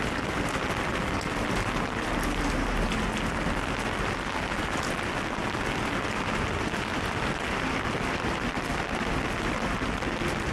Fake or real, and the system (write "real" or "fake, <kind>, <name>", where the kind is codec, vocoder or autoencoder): real